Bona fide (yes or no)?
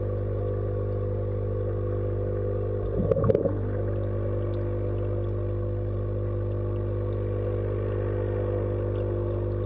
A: yes